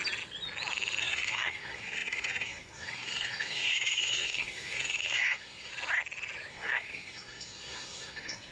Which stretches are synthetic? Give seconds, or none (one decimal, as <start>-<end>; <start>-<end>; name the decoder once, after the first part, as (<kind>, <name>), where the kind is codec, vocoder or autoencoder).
1.0-5.7 (codec, SNAC); 6.5-8.5